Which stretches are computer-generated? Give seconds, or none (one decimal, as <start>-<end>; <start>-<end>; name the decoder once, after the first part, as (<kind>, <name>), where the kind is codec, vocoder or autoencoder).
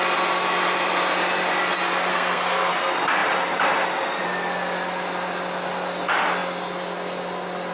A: 2.1-2.7 (codec, SNAC)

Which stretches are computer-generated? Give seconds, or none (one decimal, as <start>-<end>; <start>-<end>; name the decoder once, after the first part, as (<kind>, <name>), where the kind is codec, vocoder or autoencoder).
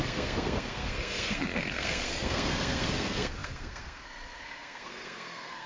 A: 0.0-5.7 (codec, SNAC)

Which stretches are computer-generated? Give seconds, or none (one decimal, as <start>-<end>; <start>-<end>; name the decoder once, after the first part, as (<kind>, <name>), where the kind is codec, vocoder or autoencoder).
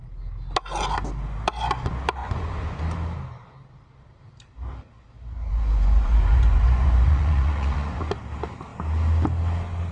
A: 2.2-2.8 (vocoder, Vocos); 5.5-8.1